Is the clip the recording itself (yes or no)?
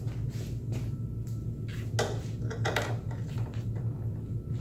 yes